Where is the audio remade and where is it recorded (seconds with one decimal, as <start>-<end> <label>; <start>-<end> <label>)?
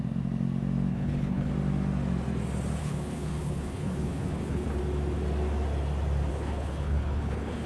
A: 0.0-0.9 recorded; 0.9-1.5 remade; 1.5-2.8 recorded; 2.8-4.8 remade; 4.8-6.3 recorded; 6.3-7.7 remade